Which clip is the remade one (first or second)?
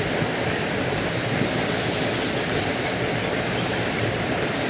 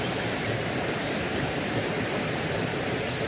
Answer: second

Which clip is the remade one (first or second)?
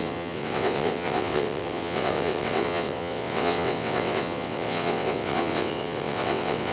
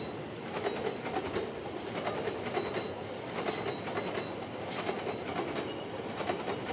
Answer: first